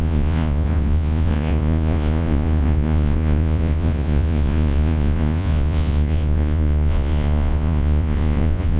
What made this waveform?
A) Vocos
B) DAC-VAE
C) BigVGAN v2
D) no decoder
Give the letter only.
A